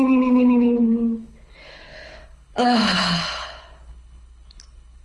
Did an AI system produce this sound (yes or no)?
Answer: yes